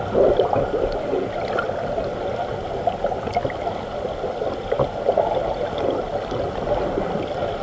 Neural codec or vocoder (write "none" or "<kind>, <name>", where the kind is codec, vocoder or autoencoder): none